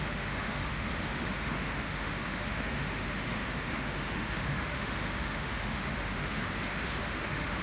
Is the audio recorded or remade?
remade